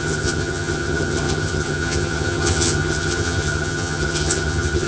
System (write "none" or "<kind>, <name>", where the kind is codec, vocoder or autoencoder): vocoder, HiFi-GAN